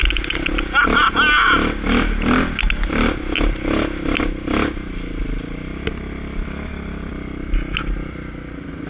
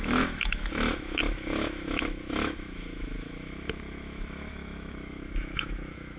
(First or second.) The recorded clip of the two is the first